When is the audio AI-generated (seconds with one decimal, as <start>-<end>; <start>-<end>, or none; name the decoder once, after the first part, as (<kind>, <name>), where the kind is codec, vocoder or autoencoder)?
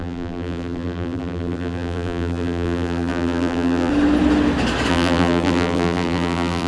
0.0-3.9 (vocoder, BigVGAN v2); 4.9-6.7